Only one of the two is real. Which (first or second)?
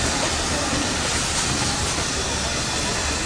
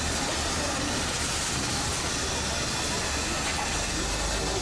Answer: second